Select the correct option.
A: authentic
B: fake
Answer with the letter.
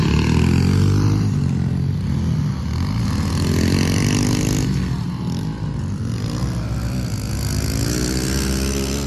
A